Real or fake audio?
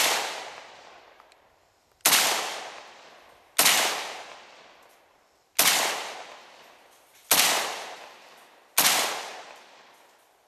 real